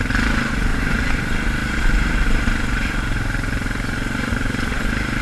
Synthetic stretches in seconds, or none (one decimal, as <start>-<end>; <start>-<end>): 0.7-1.2; 1.6-4.7